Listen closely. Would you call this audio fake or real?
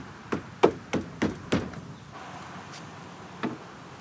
real